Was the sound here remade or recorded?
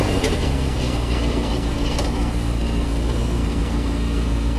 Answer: remade